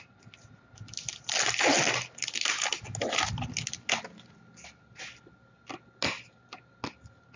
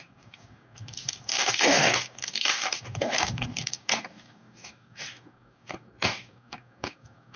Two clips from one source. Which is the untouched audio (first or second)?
first